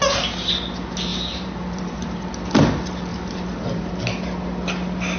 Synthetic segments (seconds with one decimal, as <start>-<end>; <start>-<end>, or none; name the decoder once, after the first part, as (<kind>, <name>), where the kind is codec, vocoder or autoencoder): 1.1-2.3 (vocoder, BigVGAN v2); 3.1-3.9